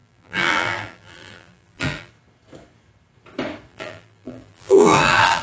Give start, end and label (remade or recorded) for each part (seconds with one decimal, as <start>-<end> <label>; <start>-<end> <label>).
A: 0.0-2.1 remade; 2.1-3.7 recorded; 3.7-5.4 remade